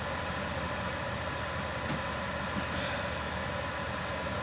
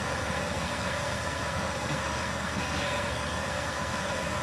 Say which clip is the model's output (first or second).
second